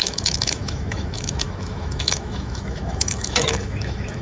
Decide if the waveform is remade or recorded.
remade